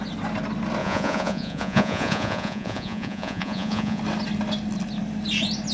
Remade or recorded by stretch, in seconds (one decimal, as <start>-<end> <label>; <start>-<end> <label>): 0.0-0.8 recorded; 0.8-4.0 remade; 4.0-5.7 recorded